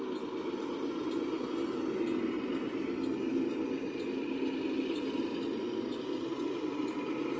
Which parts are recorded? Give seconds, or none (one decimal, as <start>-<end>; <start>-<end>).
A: 0.0-7.4